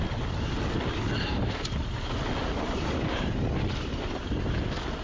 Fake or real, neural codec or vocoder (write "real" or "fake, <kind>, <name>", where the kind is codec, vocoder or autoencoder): real